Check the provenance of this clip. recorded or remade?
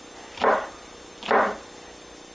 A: recorded